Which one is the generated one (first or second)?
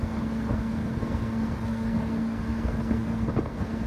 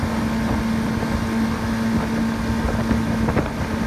first